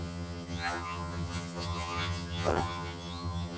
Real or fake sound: fake